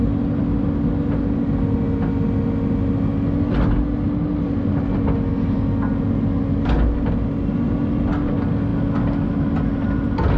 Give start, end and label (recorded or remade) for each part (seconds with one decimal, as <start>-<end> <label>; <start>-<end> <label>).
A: 0.0-10.4 recorded